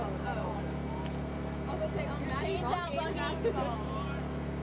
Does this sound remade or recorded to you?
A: recorded